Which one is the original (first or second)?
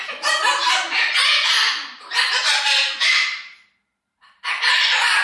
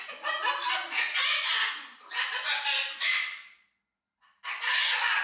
second